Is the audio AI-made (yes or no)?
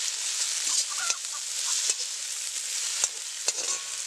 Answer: no